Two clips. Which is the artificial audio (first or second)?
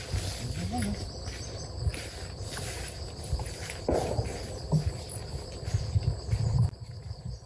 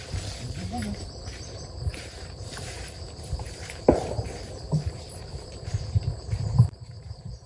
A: second